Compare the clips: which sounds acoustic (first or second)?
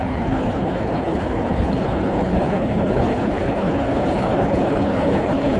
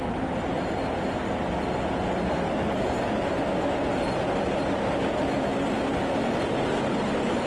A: second